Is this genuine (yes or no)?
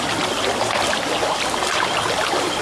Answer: yes